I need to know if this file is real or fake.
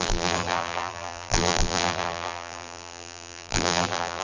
fake